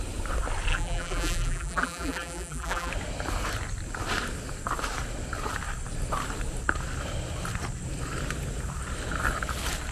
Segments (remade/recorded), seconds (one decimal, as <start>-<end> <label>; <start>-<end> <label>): 0.0-0.7 recorded; 0.7-2.9 remade; 2.9-9.9 recorded